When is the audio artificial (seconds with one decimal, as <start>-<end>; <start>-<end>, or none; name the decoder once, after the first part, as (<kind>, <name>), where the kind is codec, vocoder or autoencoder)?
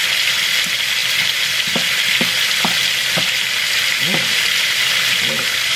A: none